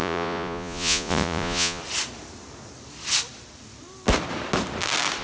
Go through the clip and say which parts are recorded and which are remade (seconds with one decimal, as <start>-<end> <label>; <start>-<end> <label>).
0.0-1.8 remade; 1.8-5.2 recorded